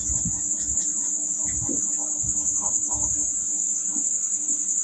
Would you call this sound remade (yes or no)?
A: no